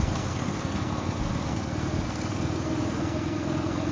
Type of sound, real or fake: fake